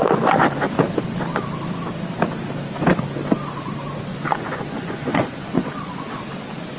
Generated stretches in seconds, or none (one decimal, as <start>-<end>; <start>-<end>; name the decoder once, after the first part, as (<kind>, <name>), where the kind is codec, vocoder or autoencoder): 4.1-6.1 (vocoder, Vocos)